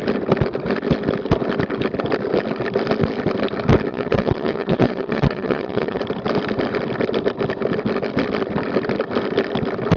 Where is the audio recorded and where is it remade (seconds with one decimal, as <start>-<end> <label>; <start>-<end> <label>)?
0.0-3.9 recorded; 3.9-6.0 remade; 6.0-10.0 recorded